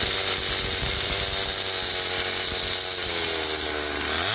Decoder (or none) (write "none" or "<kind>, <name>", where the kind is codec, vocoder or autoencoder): none